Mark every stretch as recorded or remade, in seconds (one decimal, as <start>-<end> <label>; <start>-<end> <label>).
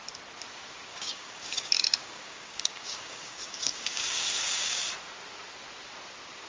0.0-0.9 recorded; 0.9-4.8 remade; 4.8-6.5 recorded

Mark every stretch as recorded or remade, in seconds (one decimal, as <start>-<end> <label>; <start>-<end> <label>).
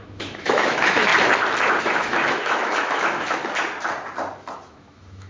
0.0-1.1 remade; 1.1-1.8 recorded; 1.8-3.4 remade; 3.4-4.7 recorded; 4.7-5.3 remade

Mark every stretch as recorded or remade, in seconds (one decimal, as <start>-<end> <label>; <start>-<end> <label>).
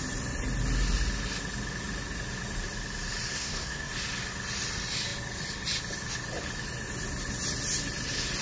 0.0-3.3 recorded; 3.3-3.9 remade; 3.9-8.4 recorded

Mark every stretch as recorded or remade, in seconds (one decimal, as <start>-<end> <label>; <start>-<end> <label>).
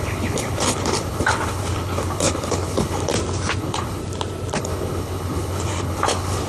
0.0-3.1 remade; 3.1-3.6 recorded; 3.6-4.0 remade; 4.0-4.6 recorded; 4.6-6.5 remade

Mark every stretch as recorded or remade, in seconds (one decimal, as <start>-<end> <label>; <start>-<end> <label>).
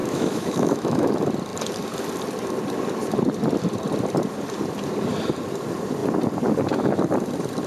0.0-1.1 remade; 1.1-7.7 recorded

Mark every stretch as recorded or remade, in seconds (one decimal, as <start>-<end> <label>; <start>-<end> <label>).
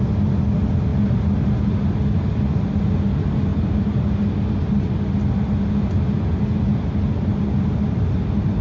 0.0-8.6 recorded